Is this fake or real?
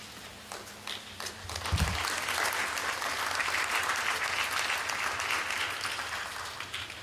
real